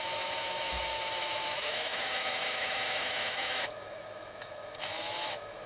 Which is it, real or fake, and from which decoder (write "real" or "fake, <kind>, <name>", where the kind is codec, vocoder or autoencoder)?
fake, autoencoder, DAC-VAE